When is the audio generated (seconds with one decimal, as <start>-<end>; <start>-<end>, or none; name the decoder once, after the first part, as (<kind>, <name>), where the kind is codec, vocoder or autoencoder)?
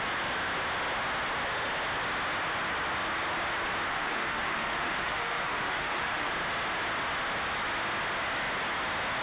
3.9-6.3 (autoencoder, DAC-VAE)